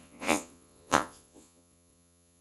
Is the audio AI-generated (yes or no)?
yes